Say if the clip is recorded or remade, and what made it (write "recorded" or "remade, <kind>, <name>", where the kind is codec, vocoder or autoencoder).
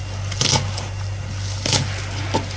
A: recorded